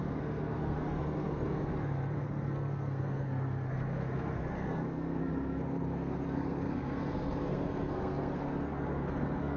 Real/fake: fake